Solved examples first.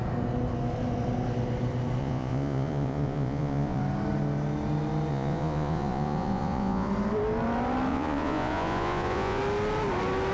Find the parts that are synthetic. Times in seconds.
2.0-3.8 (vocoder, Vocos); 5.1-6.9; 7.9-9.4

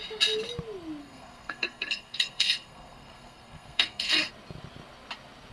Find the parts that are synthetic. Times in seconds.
1.0-4.3 (codec, SNAC)

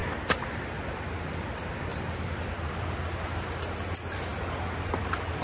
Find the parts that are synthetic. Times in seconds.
1.9-2.8 (vocoder, BigVGAN v2)

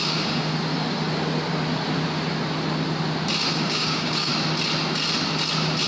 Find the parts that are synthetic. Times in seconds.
0.0-0.5 (codec, DAC); 3.5-4.3

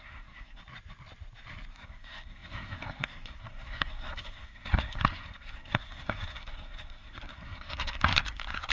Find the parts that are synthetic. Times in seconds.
0.0-0.6 (codec, SNAC); 1.7-8.7

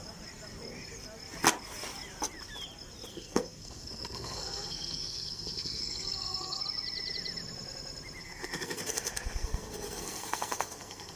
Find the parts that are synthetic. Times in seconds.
3.1-6.6 (codec, SNAC); 8.2-11.2

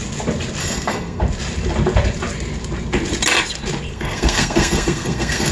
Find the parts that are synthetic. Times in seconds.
0.6-1.2 (codec, SNAC); 3.9-5.5